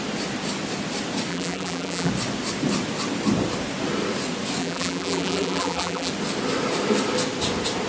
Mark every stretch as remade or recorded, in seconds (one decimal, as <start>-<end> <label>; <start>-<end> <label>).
0.0-1.3 recorded; 1.3-2.1 remade; 2.1-4.6 recorded; 4.6-6.1 remade; 6.1-7.9 recorded